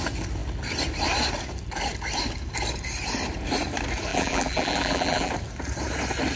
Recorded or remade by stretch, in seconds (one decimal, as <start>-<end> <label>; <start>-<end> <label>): 0.0-4.1 recorded; 4.1-5.3 remade; 5.3-6.4 recorded